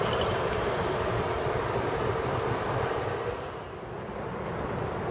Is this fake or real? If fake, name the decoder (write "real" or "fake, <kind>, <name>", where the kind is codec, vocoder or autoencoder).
real